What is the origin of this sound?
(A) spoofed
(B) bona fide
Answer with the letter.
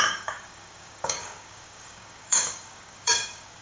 A